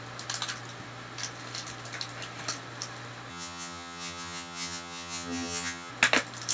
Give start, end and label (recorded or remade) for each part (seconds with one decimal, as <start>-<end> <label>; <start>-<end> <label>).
0.0-3.3 recorded; 3.3-5.9 remade; 5.9-6.5 recorded